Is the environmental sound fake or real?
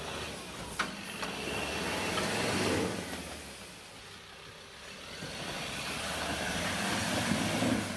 real